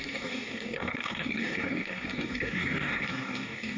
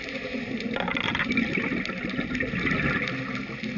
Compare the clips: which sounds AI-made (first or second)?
first